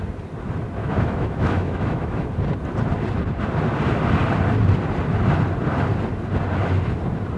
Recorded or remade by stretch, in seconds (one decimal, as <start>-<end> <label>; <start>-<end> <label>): 0.0-0.8 recorded; 0.8-2.3 remade; 2.3-7.4 recorded